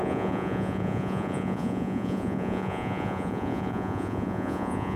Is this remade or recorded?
remade